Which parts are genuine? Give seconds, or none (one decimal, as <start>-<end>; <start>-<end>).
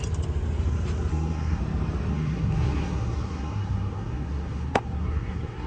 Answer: 0.0-1.1; 1.6-2.1